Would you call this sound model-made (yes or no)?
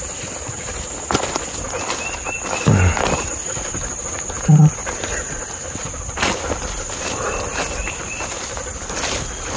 no